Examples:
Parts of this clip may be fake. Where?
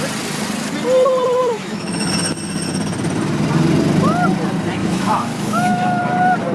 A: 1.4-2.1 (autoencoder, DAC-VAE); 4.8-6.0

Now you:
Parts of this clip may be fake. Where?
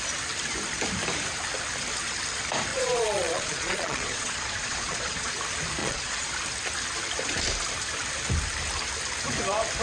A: 2.7-5.3 (vocoder, Vocos); 5.8-6.3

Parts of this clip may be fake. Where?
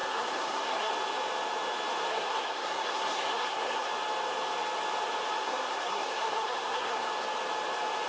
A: 0.0-0.9 (codec, SNAC); 2.1-3.9; 5.4-7.1